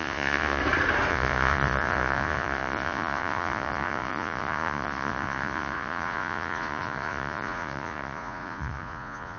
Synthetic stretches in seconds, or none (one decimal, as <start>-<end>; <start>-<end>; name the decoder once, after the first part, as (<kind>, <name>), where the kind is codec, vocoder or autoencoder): 0.0-0.6 (vocoder, Vocos); 1.1-9.4